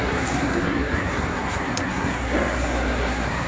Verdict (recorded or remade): remade